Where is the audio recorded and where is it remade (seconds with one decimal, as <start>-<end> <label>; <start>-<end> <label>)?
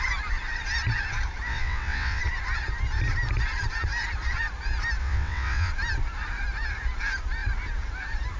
0.0-1.5 recorded; 1.5-2.2 remade; 2.2-5.0 recorded; 5.0-5.7 remade; 5.7-8.4 recorded